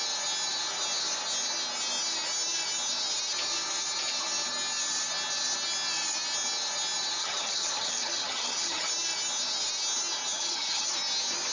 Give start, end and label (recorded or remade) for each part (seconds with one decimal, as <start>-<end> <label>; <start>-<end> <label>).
0.0-7.2 recorded; 7.2-8.9 remade; 8.9-10.3 recorded; 10.3-10.9 remade; 10.9-11.5 recorded